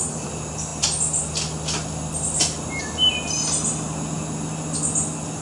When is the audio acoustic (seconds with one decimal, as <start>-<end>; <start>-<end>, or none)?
0.0-5.4